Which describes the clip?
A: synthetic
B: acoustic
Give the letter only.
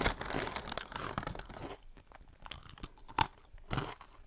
B